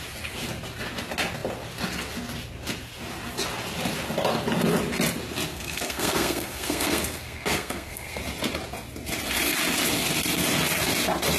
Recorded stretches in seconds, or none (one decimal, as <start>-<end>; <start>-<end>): 0.0-5.5; 8.2-11.4